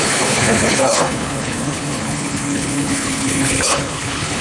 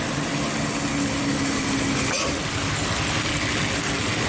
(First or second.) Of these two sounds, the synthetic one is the first